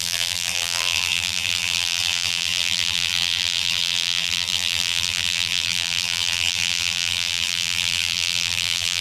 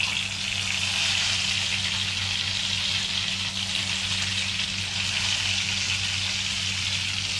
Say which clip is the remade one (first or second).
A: first